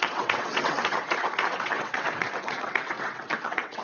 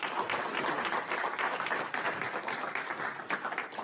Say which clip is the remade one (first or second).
first